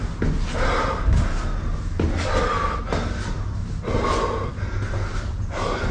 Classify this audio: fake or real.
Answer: real